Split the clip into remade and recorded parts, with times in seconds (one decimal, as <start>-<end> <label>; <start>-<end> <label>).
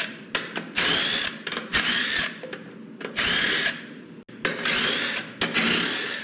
0.0-6.2 recorded